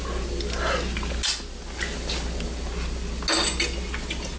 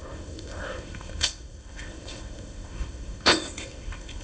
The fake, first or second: second